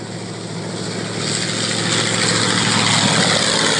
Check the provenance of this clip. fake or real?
real